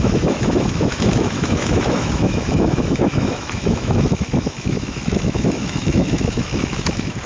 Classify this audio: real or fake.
fake